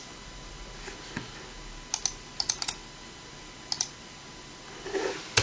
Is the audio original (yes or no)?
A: yes